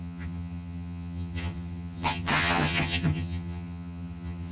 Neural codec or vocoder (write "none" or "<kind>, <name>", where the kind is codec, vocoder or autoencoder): vocoder, HiFi-GAN